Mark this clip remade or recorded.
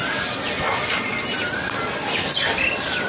recorded